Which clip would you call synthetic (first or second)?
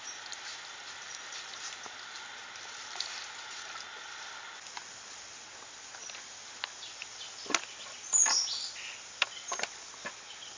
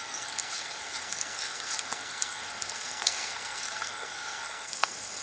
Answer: second